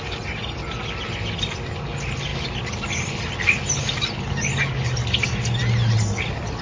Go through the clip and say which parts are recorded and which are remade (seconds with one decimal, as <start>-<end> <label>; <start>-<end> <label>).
0.0-6.6 recorded